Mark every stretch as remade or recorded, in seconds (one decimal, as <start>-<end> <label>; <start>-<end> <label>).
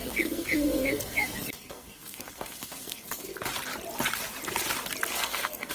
0.0-3.3 remade; 3.3-5.1 recorded; 5.1-5.7 remade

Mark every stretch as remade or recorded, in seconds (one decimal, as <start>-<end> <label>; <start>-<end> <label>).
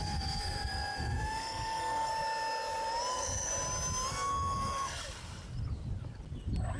0.0-2.1 remade; 2.1-3.1 recorded; 3.1-3.5 remade; 3.5-4.1 recorded; 4.1-5.0 remade; 5.0-6.8 recorded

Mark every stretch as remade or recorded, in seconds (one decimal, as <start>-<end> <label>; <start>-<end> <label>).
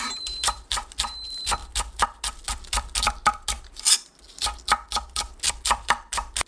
0.0-1.6 remade; 1.6-5.5 recorded; 5.5-6.5 remade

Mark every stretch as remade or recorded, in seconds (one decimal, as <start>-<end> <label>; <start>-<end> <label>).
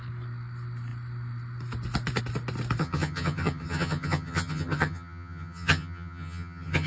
0.0-2.8 recorded; 2.8-6.9 remade